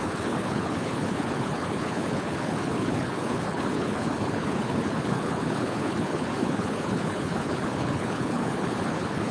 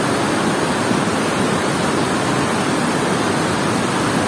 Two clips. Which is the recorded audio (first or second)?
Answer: second